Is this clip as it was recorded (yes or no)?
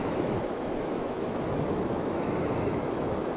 no